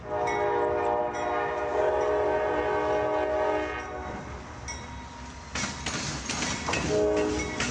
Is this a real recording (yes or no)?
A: yes